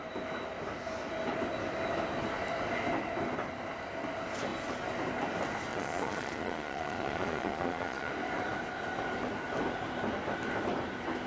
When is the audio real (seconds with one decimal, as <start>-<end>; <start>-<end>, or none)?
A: 0.0-5.7; 8.1-11.3